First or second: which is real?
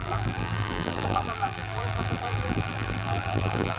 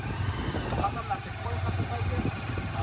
second